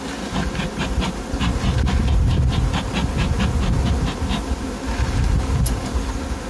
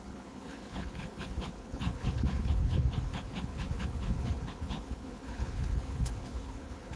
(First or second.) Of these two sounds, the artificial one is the second